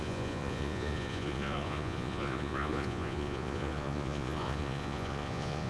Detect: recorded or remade remade